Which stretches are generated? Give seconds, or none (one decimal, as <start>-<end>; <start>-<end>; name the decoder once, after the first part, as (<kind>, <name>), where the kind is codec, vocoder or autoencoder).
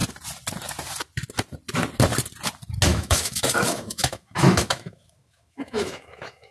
2.9-6.5 (autoencoder, DAC-VAE)